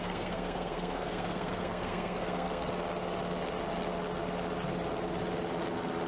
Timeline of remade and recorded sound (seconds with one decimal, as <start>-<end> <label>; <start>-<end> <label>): 0.0-2.7 remade; 2.7-6.1 recorded